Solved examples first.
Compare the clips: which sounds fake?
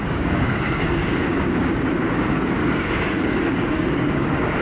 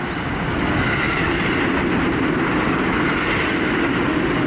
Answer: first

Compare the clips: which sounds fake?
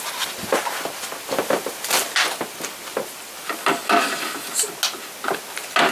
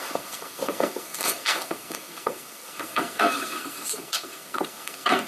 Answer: second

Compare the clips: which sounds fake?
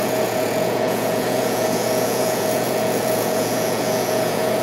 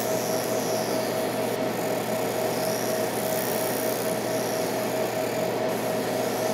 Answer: first